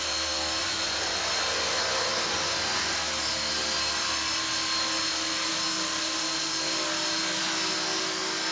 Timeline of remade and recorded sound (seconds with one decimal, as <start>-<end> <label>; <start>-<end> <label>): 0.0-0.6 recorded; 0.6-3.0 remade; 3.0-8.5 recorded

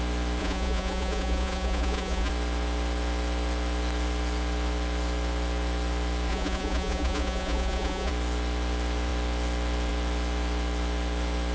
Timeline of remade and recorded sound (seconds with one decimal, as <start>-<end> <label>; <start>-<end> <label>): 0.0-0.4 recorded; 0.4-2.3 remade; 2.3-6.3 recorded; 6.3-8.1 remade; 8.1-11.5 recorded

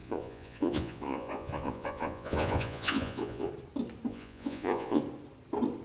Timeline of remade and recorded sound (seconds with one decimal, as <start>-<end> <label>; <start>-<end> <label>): 0.0-3.5 remade; 3.5-4.1 recorded; 4.1-5.0 remade; 5.0-5.8 recorded

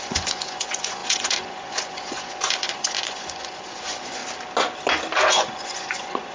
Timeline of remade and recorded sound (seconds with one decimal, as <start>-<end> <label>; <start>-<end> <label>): 0.0-4.2 remade; 4.2-5.3 recorded; 5.3-6.3 remade

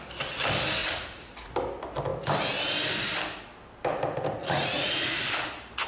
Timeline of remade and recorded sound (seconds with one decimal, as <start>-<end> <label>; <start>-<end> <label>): 0.0-0.8 recorded; 0.8-1.5 remade; 1.5-4.4 recorded; 4.4-5.2 remade; 5.2-5.9 recorded

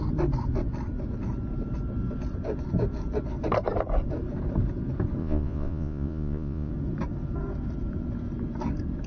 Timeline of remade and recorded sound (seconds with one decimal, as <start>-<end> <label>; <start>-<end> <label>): 0.0-5.2 recorded; 5.2-6.7 remade; 6.7-9.1 recorded

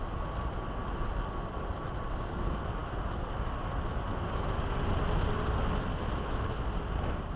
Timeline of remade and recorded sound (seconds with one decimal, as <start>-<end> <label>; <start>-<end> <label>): 0.0-7.4 recorded